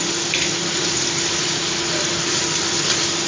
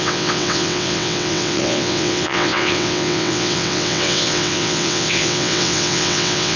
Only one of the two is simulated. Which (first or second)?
second